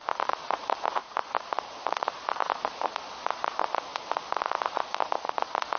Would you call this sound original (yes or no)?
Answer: no